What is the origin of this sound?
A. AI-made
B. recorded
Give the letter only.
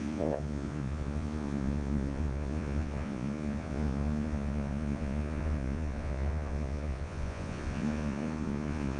A